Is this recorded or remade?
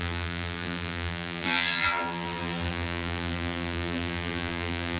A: remade